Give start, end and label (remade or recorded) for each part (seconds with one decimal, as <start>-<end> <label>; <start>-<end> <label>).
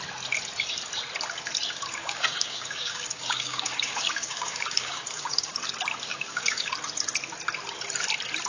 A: 0.0-2.0 recorded; 2.0-5.6 remade; 5.6-6.1 recorded; 6.1-6.7 remade; 6.7-8.5 recorded